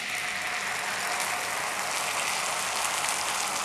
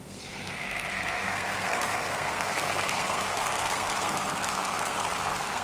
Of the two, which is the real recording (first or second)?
first